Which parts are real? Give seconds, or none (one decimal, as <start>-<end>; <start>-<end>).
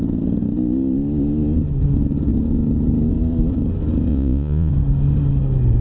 0.0-4.1; 4.7-5.8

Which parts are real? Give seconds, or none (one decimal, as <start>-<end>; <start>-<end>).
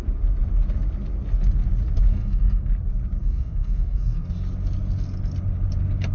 0.0-2.1; 2.7-3.2; 4.3-6.1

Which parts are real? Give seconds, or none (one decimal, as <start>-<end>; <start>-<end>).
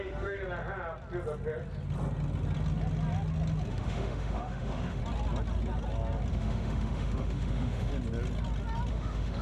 0.4-3.7; 5.0-6.3; 7.9-8.9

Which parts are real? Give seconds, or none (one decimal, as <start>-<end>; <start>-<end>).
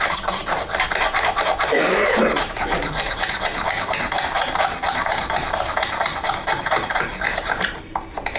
none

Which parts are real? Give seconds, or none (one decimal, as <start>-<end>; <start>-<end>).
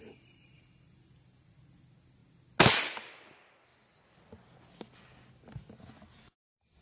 0.0-6.8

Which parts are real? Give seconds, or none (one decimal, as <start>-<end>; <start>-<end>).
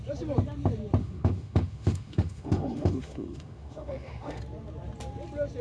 0.0-1.0; 4.4-5.6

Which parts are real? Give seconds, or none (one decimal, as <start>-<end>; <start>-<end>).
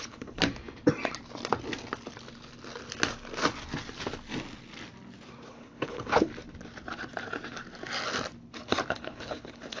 0.4-5.5; 6.3-8.9